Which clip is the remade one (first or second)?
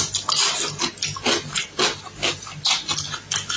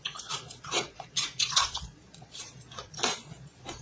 second